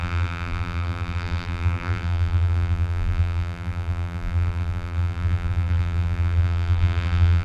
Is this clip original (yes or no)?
no